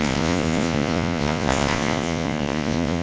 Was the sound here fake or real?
fake